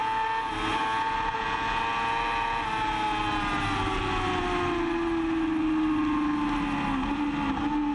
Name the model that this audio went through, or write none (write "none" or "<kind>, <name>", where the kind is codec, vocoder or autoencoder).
none